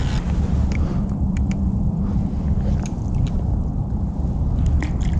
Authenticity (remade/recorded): recorded